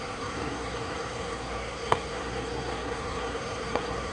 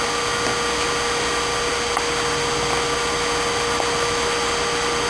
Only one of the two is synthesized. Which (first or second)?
first